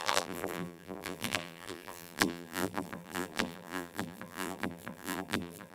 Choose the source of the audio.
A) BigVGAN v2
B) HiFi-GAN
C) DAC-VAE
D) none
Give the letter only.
A